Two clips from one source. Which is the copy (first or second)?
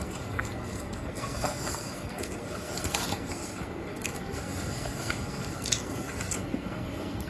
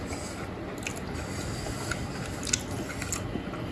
first